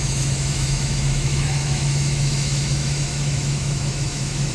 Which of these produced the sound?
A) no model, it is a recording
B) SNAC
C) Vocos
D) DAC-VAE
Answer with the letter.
D